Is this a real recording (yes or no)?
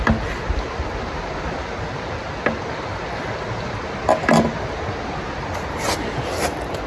yes